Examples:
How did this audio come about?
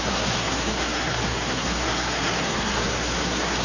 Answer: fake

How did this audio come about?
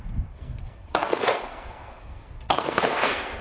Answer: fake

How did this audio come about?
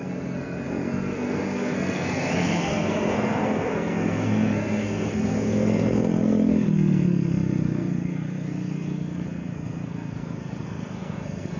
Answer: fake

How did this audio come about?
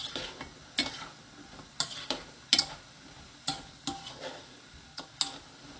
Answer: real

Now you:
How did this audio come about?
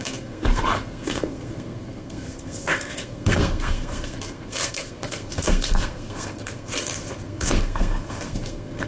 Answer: fake